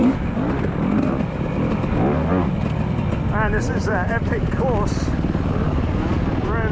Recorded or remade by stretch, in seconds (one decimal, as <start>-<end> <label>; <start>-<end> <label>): 0.0-3.8 recorded; 3.8-4.5 remade; 4.5-6.7 recorded